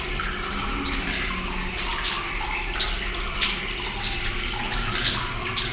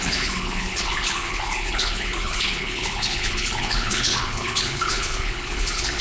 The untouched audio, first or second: first